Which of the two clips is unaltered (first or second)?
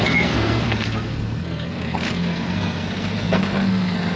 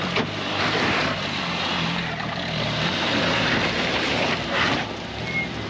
second